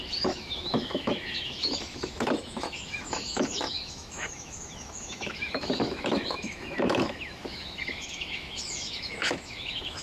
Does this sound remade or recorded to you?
remade